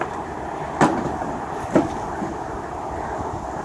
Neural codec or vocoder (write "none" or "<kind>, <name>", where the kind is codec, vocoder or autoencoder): vocoder, BigVGAN v2